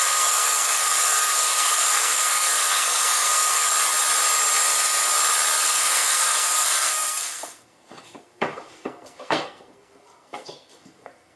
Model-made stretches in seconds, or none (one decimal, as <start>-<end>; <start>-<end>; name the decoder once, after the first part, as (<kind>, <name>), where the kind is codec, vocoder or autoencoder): 0.0-3.7 (codec, SNAC); 5.6-11.4